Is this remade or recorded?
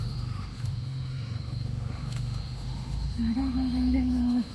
remade